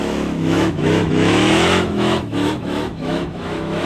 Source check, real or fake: fake